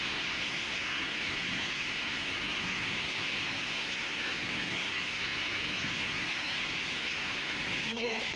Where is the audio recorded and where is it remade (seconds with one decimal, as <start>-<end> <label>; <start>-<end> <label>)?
0.0-8.4 remade